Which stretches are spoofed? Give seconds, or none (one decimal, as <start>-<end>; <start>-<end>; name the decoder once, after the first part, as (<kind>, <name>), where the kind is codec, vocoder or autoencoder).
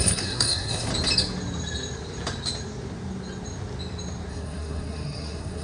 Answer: 0.0-0.9 (codec, SNAC); 4.3-5.6